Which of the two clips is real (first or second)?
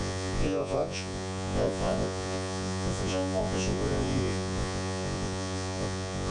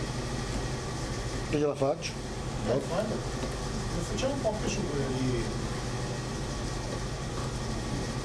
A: second